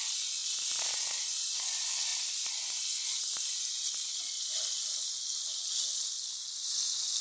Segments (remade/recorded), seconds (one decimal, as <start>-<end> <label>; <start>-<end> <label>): 0.0-7.2 recorded